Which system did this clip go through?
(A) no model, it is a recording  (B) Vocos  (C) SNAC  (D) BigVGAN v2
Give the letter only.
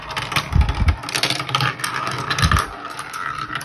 A